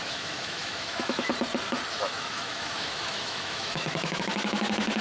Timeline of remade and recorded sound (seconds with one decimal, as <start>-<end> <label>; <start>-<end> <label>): 0.0-1.3 remade; 1.3-1.9 recorded; 1.9-5.0 remade